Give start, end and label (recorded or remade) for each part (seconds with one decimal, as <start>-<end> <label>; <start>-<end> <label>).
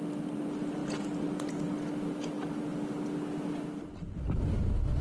0.0-5.0 recorded